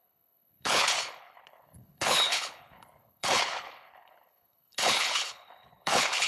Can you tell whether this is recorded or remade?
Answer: remade